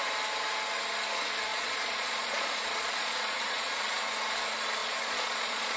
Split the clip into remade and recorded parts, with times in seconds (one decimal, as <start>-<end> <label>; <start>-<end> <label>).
0.0-1.5 recorded; 1.5-4.0 remade; 4.0-4.8 recorded; 4.8-5.8 remade